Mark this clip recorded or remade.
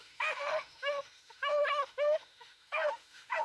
remade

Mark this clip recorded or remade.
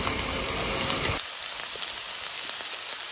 recorded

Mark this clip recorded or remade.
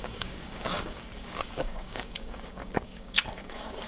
remade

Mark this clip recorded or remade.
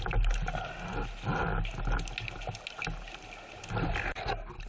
recorded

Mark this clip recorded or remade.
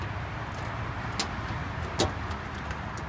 recorded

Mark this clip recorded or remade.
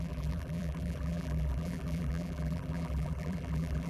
remade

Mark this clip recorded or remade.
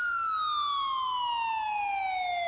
recorded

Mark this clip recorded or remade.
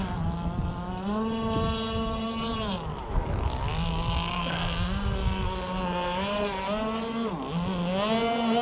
recorded